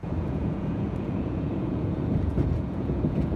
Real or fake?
fake